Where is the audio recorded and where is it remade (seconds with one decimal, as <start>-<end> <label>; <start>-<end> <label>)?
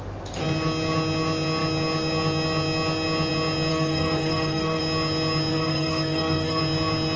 0.0-3.7 recorded; 3.7-4.8 remade; 4.8-5.5 recorded; 5.5-6.6 remade; 6.6-7.2 recorded